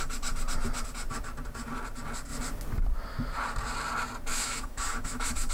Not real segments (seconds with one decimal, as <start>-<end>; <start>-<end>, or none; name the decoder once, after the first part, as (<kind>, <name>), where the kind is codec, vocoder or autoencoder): 4.3-5.5 (autoencoder, DAC-VAE)